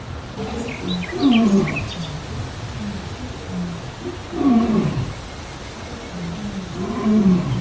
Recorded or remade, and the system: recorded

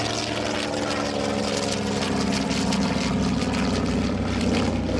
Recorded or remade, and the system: recorded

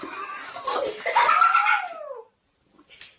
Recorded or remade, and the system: recorded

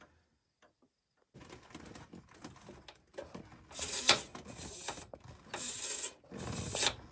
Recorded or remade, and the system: recorded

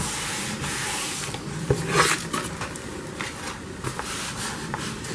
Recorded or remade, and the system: recorded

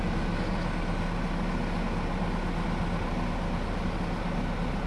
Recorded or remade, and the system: recorded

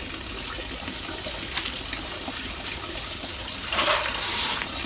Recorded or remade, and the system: recorded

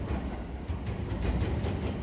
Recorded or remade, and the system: recorded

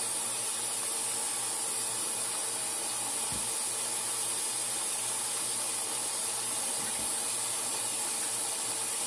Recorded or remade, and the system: recorded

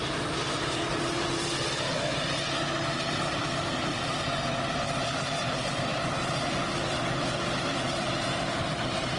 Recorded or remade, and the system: remade, vocoder, BigVGAN v2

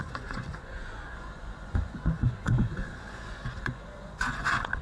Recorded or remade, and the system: remade, vocoder, Vocos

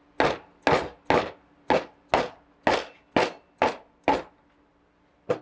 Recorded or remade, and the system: recorded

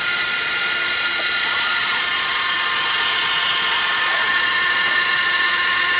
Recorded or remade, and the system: remade, vocoder, Vocos